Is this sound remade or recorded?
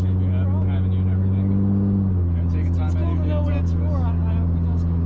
recorded